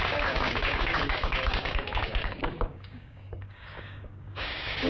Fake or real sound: fake